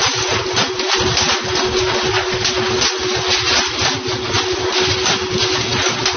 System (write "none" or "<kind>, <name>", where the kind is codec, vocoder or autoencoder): none